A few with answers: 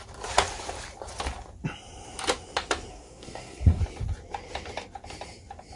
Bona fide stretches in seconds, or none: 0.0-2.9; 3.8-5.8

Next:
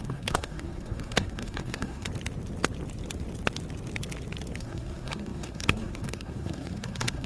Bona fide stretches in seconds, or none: 2.1-4.6

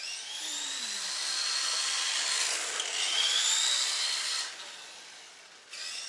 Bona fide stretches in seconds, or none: 0.0-6.1

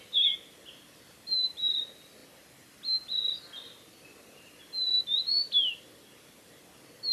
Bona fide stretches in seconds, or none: 0.0-7.1